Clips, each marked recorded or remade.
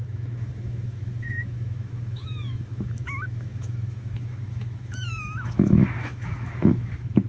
remade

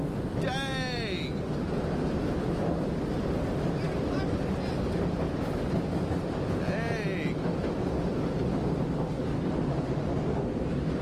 recorded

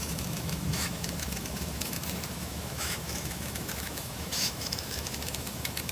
remade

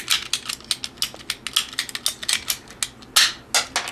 recorded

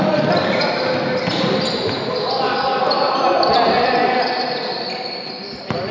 recorded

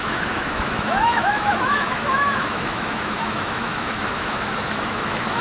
remade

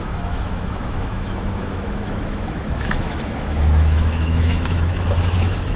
remade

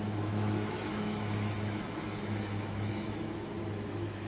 remade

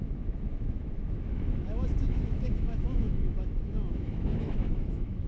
remade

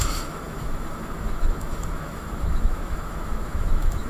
remade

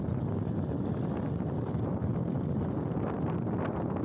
recorded